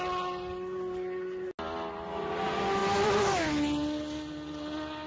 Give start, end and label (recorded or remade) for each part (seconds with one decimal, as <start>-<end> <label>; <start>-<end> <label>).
0.0-5.1 recorded